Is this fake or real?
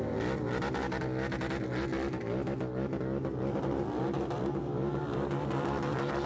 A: real